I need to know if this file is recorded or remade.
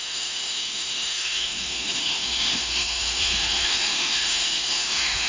remade